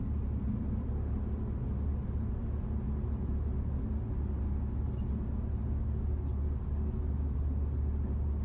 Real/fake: real